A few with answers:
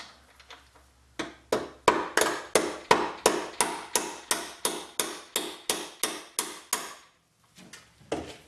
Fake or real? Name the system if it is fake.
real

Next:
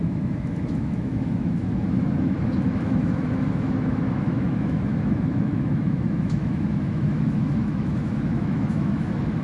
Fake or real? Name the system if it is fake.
fake, autoencoder, DAC-VAE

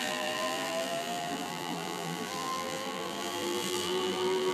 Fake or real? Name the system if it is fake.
fake, vocoder, BigVGAN v2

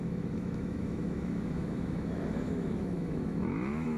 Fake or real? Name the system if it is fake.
fake, autoencoder, DAC-VAE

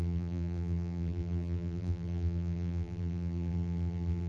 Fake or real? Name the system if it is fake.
fake, vocoder, BigVGAN v2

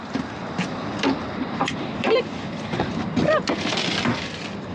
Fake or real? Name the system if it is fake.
fake, vocoder, BigVGAN v2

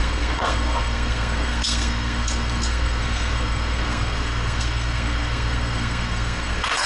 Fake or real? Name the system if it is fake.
fake, codec, SNAC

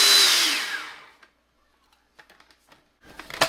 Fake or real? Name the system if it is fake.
real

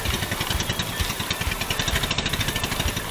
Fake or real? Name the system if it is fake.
fake, vocoder, BigVGAN v2